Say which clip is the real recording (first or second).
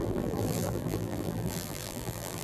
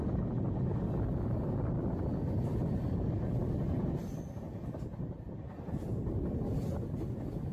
second